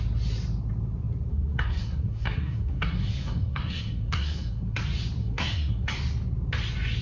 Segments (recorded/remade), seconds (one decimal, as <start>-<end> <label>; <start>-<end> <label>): 0.0-1.3 recorded; 1.3-4.8 remade; 4.8-5.2 recorded; 5.2-5.9 remade; 5.9-7.0 recorded